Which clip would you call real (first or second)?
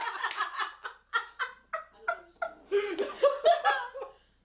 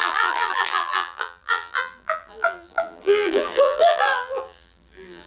first